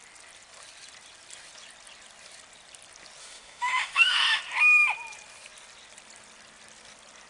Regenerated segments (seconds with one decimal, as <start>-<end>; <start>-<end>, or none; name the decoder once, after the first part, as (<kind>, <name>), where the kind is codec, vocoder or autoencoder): 3.2-4.4 (autoencoder, DAC-VAE)